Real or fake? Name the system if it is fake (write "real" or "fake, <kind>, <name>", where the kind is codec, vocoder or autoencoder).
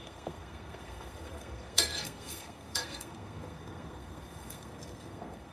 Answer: fake, codec, SNAC